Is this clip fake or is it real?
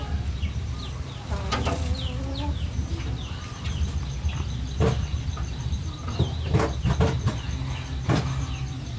real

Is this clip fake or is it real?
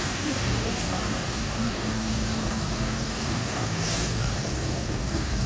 fake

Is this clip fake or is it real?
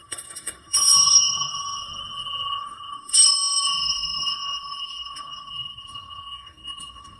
fake